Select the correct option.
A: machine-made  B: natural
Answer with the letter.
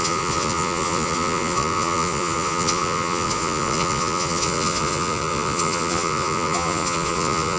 A